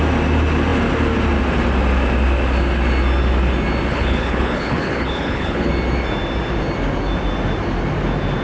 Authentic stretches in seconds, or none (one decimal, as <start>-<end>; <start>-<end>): 0.0-3.9; 5.7-8.4